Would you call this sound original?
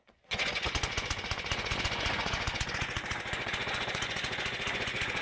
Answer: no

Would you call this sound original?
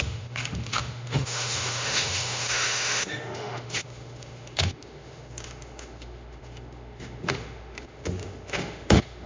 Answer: no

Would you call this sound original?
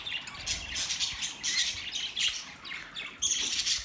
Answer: yes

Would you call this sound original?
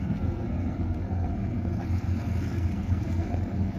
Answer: no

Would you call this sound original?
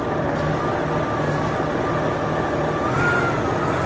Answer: yes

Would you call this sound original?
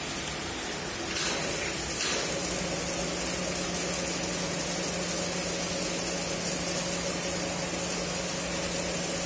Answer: yes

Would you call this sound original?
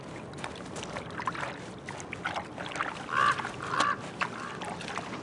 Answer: yes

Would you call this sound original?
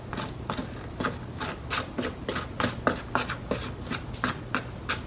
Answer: yes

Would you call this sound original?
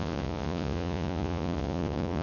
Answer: no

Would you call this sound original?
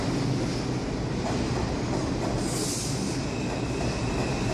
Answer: yes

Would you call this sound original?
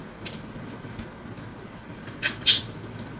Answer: no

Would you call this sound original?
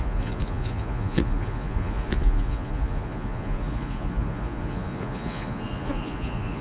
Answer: no